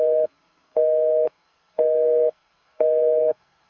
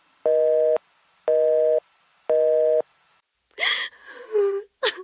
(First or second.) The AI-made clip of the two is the first